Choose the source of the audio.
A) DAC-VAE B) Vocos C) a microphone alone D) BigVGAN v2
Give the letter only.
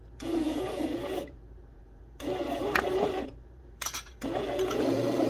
B